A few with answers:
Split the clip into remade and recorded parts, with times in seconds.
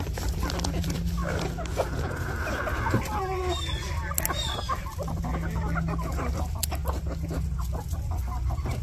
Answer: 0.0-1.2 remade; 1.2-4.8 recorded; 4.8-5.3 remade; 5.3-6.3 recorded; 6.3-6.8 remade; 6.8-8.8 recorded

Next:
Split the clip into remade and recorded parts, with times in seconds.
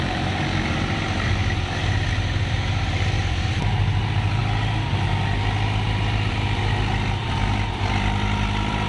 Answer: 0.0-1.4 remade; 1.4-2.9 recorded; 2.9-4.4 remade; 4.4-6.3 recorded; 6.3-8.9 remade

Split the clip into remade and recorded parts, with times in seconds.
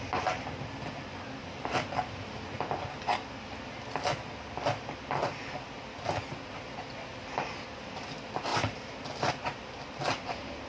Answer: 0.0-1.4 recorded; 1.4-2.6 remade; 2.6-8.5 recorded; 8.5-9.3 remade; 9.3-10.7 recorded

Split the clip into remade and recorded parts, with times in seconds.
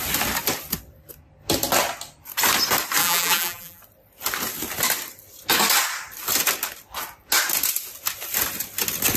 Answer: 0.0-3.0 recorded; 3.0-3.8 remade; 3.8-9.2 recorded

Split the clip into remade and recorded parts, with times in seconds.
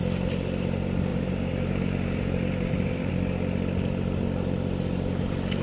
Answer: 0.0-1.1 recorded; 1.1-3.1 remade; 3.1-5.6 recorded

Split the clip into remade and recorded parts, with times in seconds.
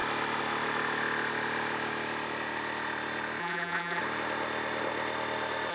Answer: 0.0-3.4 recorded; 3.4-4.0 remade; 4.0-5.7 recorded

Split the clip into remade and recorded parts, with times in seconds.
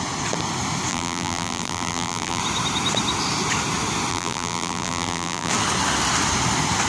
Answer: 0.0-0.9 recorded; 0.9-2.4 remade; 2.4-4.1 recorded; 4.1-5.5 remade; 5.5-6.9 recorded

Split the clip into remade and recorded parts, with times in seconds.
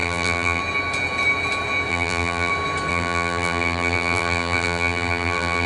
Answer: 0.0-0.6 remade; 0.6-1.9 recorded; 1.9-2.5 remade; 2.5-2.9 recorded; 2.9-5.7 remade